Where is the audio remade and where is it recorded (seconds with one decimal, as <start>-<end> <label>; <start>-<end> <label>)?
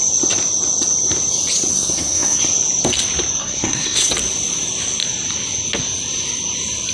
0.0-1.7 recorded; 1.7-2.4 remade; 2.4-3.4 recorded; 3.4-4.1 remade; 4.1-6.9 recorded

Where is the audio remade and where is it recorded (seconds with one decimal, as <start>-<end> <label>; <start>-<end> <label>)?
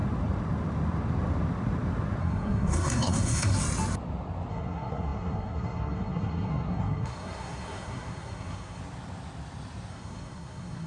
0.0-2.2 recorded; 2.2-3.5 remade; 3.5-4.5 recorded; 4.5-8.8 remade; 8.8-9.9 recorded; 9.9-10.9 remade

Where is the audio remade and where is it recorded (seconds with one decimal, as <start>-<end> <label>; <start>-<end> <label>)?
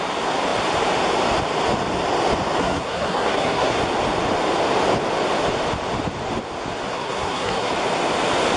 0.0-2.6 recorded; 2.6-3.8 remade; 3.8-6.9 recorded; 6.9-7.7 remade; 7.7-8.6 recorded